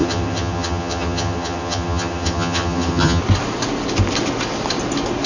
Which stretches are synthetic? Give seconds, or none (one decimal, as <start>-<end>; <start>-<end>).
0.0-3.2